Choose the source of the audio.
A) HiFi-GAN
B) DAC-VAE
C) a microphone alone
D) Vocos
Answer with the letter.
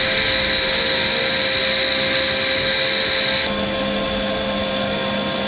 C